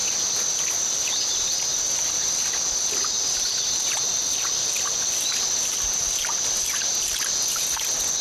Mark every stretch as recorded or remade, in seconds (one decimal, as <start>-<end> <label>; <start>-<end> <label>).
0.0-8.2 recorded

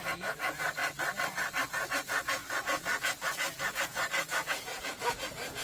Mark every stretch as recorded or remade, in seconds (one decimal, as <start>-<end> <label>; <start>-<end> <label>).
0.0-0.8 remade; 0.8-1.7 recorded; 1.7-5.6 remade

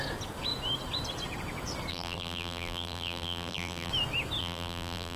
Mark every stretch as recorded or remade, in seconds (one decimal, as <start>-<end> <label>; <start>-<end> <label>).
0.0-1.9 recorded; 1.9-3.9 remade; 3.9-4.4 recorded; 4.4-5.2 remade

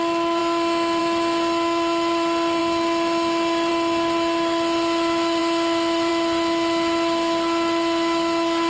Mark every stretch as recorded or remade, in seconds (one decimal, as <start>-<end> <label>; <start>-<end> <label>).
0.0-8.7 recorded

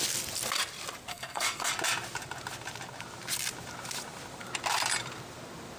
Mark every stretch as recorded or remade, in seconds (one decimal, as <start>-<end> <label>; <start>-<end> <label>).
0.0-1.1 recorded; 1.1-1.7 remade; 1.7-5.8 recorded

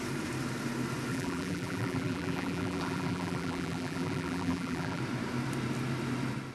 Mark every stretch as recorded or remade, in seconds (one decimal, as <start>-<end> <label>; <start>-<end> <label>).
0.0-1.1 recorded; 1.1-5.0 remade; 5.0-6.5 recorded